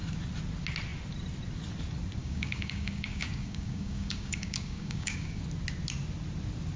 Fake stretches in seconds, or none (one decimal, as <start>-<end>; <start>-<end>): 2.2-5.4